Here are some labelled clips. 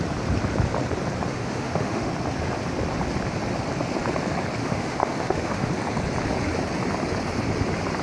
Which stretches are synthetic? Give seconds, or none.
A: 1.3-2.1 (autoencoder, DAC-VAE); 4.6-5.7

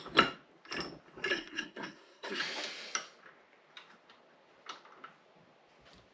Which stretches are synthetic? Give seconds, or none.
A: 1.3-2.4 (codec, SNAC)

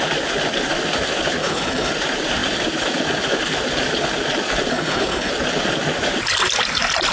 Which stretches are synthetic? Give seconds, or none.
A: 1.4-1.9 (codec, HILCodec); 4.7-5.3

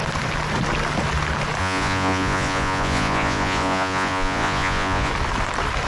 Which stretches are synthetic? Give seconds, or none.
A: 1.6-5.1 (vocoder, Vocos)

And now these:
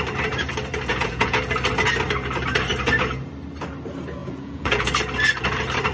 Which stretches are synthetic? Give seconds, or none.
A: 0.9-1.4 (vocoder, Vocos); 4.2-4.9

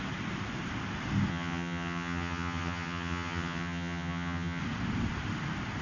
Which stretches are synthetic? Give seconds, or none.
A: 1.3-4.6 (vocoder, HiFi-GAN)